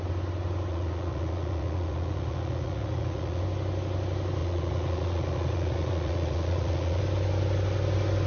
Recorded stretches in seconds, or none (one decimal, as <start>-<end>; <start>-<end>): 0.0-0.7; 3.4-4.4; 7.0-8.3